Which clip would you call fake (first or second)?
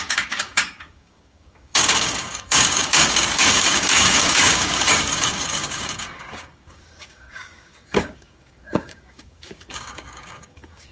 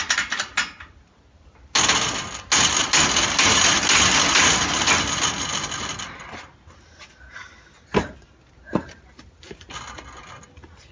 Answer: first